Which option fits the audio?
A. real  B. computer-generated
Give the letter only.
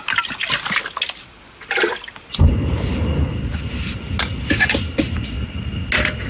A